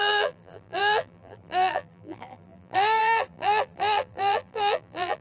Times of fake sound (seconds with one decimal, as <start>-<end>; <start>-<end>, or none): 0.0-5.2